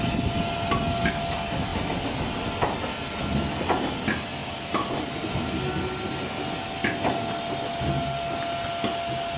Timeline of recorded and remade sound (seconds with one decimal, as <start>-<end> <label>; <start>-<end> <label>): 0.0-9.4 recorded